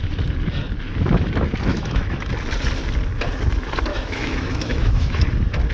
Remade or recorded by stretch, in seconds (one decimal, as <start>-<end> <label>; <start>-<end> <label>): 0.0-1.7 recorded; 1.7-2.3 remade; 2.3-3.9 recorded; 3.9-5.2 remade; 5.2-5.7 recorded